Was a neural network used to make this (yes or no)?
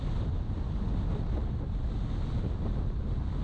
no